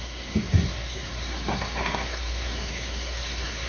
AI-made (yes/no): yes